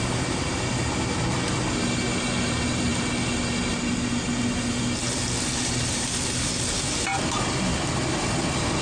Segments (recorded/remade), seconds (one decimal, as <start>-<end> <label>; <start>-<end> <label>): 0.0-8.8 recorded